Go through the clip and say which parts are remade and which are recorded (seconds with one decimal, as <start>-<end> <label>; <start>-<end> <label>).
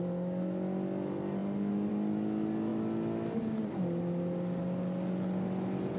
0.0-6.0 recorded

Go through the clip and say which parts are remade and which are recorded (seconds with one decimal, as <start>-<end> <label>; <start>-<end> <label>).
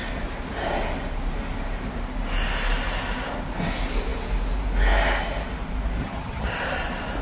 0.0-6.0 recorded; 6.0-6.5 remade; 6.5-7.2 recorded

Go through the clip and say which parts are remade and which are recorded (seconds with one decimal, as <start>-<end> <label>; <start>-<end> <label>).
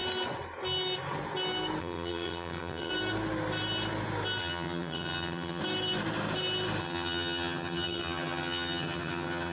0.0-1.8 recorded; 1.8-2.9 remade; 2.9-4.4 recorded; 4.4-5.6 remade; 5.6-6.8 recorded; 6.8-9.5 remade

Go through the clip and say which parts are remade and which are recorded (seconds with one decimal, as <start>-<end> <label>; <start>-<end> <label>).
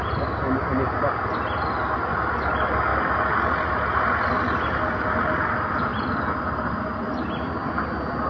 0.0-8.3 recorded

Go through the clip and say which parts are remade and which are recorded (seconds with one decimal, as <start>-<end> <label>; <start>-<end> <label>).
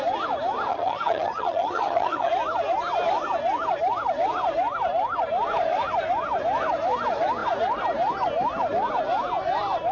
0.0-0.7 recorded; 0.7-2.3 remade; 2.3-9.9 recorded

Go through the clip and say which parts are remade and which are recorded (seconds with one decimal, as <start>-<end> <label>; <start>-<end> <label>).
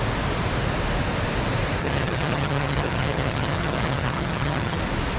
0.0-1.8 recorded; 1.8-4.8 remade; 4.8-5.2 recorded